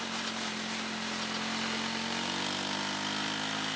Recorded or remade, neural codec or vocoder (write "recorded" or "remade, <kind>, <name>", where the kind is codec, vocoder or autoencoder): recorded